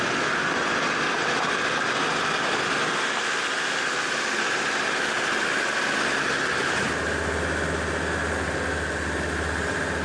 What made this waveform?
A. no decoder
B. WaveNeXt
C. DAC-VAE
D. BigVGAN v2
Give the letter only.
A